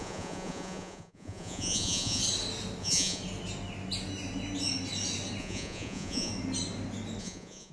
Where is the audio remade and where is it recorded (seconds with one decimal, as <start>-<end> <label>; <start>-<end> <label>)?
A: 0.0-2.2 remade; 2.2-2.8 recorded; 2.8-3.2 remade; 3.2-5.4 recorded; 5.4-6.3 remade; 6.3-7.2 recorded; 7.2-7.7 remade